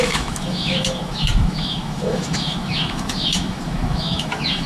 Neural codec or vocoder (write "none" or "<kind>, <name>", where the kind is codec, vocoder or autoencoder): autoencoder, DAC-VAE